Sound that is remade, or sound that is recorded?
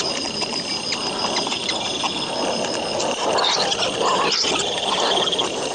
recorded